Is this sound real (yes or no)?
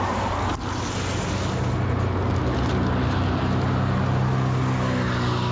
yes